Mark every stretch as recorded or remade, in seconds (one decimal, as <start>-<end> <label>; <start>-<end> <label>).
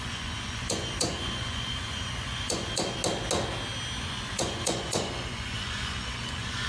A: 0.0-3.0 remade; 3.0-4.0 recorded; 4.0-6.7 remade